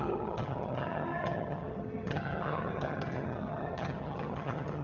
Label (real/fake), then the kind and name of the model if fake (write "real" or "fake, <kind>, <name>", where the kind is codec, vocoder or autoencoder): fake, vocoder, HiFi-GAN